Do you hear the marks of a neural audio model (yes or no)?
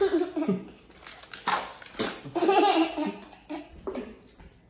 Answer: no